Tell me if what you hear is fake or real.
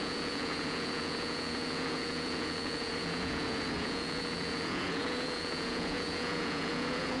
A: fake